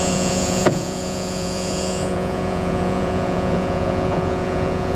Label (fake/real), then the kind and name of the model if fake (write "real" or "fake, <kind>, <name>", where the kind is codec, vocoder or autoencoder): fake, vocoder, Vocos